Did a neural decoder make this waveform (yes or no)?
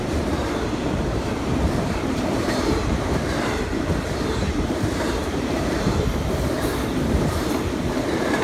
yes